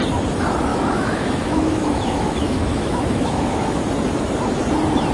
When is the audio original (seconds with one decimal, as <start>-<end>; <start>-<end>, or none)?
0.0-0.7; 3.8-5.1